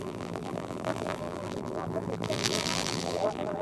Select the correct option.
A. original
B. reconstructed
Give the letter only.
B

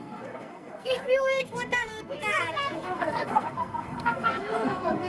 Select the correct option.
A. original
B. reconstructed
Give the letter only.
B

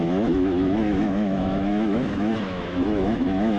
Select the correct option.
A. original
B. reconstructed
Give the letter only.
B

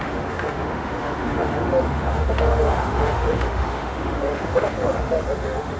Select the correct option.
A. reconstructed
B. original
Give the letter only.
A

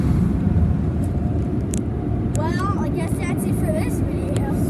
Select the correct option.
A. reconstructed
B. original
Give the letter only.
A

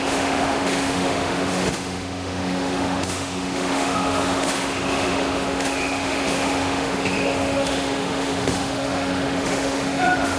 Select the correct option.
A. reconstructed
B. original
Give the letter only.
A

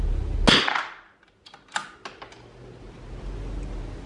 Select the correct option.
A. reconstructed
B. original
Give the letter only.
B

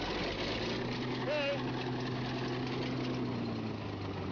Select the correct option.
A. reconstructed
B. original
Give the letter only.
B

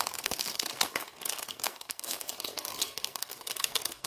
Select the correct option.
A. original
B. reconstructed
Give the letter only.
B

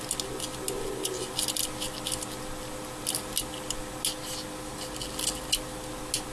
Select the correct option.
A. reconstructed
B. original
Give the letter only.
B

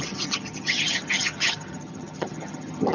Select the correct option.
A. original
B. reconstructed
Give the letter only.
B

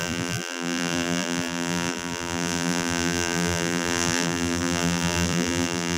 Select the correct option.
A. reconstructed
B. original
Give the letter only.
A